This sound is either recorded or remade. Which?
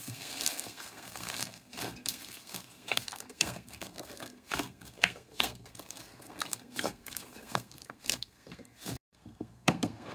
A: remade